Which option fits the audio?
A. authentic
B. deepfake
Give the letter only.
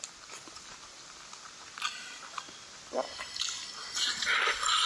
A